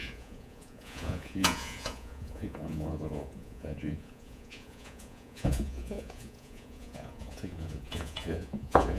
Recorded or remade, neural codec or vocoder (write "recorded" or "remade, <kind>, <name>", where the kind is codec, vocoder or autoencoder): remade, vocoder, Vocos